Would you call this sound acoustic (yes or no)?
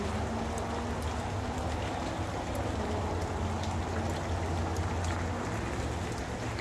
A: yes